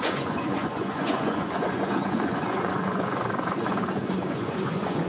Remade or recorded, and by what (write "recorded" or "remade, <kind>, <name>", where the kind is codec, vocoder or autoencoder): remade, vocoder, Vocos